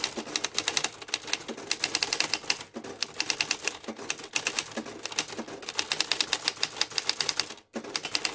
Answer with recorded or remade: recorded